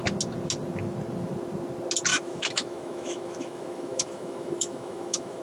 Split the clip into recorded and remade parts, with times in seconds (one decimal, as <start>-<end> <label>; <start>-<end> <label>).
0.0-2.1 recorded; 2.1-5.4 remade